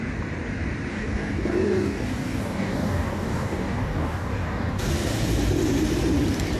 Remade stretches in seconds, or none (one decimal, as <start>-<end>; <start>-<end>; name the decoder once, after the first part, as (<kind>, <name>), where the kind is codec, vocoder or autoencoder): 0.9-4.9 (codec, DAC)